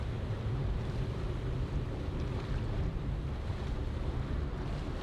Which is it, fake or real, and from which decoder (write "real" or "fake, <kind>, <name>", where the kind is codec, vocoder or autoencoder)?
real